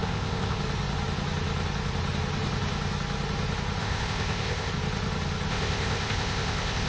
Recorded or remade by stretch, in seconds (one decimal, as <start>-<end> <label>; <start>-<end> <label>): 0.0-0.6 remade; 0.6-3.8 recorded; 3.8-4.7 remade; 4.7-5.5 recorded; 5.5-6.9 remade

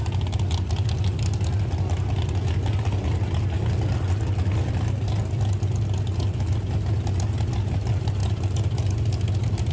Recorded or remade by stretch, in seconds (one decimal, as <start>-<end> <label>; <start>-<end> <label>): 0.0-9.7 recorded

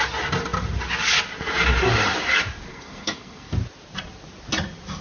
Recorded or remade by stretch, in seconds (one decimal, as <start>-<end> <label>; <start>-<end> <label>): 0.0-2.7 recorded; 2.7-3.5 remade; 3.5-5.0 recorded

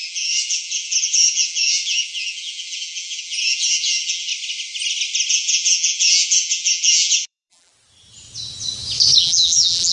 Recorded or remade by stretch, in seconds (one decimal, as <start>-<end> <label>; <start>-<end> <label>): 0.0-4.3 remade; 4.3-5.3 recorded; 5.3-7.7 remade; 7.7-9.2 recorded; 9.2-9.9 remade